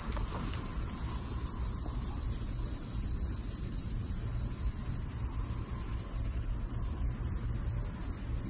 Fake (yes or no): no